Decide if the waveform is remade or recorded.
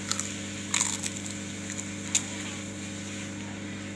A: recorded